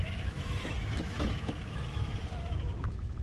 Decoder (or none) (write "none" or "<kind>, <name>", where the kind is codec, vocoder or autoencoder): autoencoder, DAC-VAE